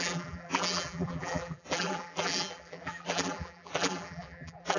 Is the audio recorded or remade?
remade